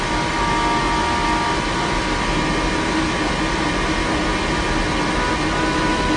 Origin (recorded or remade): recorded